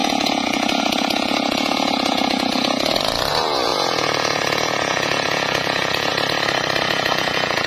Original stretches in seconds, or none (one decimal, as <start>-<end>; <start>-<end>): 6.1-6.9